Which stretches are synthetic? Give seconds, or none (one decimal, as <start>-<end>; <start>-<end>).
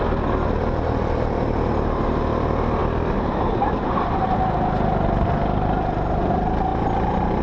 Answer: none